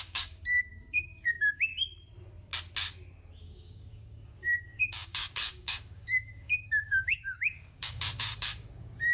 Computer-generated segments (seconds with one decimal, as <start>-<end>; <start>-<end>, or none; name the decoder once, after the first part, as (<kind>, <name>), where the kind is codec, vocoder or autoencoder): 0.0-1.7 (codec, DAC); 3.4-9.1

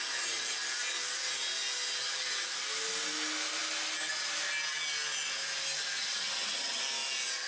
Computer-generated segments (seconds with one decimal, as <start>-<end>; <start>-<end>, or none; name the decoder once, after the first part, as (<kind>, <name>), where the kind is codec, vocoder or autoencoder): 6.0-6.8 (vocoder, HiFi-GAN)

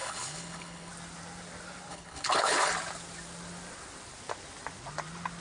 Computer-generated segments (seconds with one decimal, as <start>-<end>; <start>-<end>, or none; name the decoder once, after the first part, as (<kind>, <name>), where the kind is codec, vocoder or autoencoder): 0.0-0.9 (codec, HILCodec); 1.9-2.7

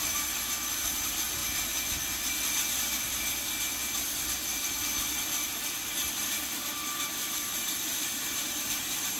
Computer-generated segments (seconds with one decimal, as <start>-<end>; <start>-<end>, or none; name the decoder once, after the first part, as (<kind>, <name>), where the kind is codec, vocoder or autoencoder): 0.0-1.4 (vocoder, BigVGAN v2); 5.6-9.2

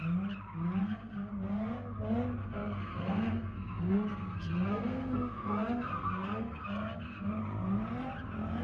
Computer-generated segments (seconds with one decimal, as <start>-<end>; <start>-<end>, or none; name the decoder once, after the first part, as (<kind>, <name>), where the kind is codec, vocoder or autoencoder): 0.8-1.3 (codec, SNAC); 2.4-7.3

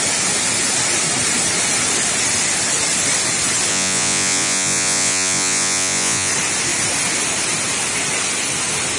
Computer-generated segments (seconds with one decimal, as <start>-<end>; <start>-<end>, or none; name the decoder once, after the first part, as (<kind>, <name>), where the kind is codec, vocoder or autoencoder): 3.7-6.3 (vocoder, Vocos)